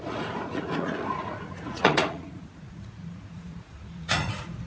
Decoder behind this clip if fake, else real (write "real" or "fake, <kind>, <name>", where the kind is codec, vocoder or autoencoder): fake, vocoder, Vocos